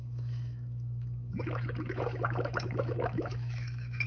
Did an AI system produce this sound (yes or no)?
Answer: yes